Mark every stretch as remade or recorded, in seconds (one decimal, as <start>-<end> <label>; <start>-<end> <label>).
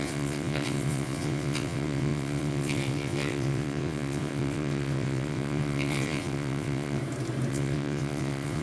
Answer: 0.0-7.0 remade; 7.0-7.5 recorded; 7.5-8.6 remade